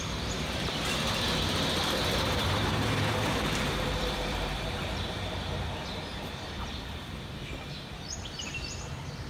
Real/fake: fake